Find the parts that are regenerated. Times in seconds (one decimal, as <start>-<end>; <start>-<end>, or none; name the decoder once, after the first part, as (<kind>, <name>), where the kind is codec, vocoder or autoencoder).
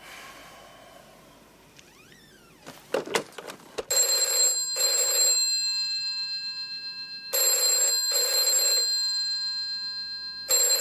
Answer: none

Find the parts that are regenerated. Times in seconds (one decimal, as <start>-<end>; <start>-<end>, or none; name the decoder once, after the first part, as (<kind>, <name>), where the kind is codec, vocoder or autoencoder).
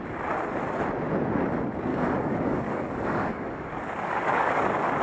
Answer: 1.9-5.0 (codec, DAC)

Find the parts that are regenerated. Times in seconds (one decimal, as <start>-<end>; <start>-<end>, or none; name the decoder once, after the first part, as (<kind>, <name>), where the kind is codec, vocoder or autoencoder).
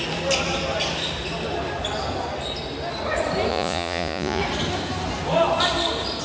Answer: 3.5-4.4 (vocoder, Vocos)